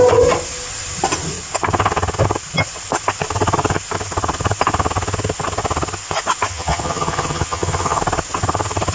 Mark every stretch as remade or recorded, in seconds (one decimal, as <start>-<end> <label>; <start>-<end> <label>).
0.0-6.5 recorded; 6.5-8.0 remade; 8.0-8.9 recorded